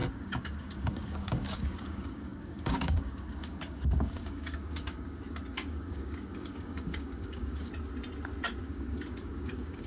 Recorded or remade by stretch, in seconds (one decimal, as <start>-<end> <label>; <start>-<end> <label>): 0.0-7.7 remade; 7.7-8.6 recorded; 8.6-9.9 remade